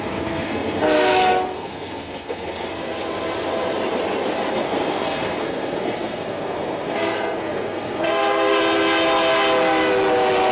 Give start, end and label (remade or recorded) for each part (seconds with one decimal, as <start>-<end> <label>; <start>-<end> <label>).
0.0-2.9 remade; 2.9-4.5 recorded; 4.5-8.6 remade; 8.6-10.5 recorded